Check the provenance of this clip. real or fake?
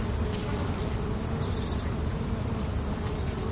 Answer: real